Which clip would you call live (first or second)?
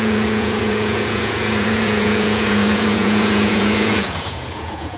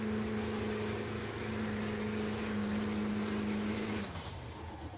second